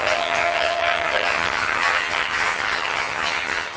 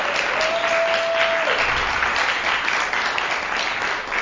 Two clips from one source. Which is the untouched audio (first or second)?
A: second